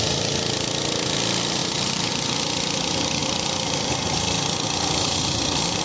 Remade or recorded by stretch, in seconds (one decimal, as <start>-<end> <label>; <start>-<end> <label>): 0.0-5.8 remade